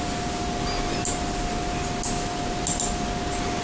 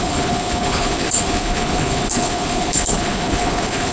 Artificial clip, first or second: second